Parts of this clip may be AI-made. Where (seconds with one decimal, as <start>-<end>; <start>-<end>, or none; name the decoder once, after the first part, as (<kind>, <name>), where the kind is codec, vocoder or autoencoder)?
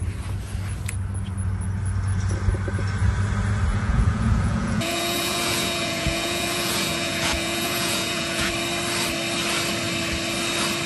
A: 3.7-8.5 (vocoder, Vocos)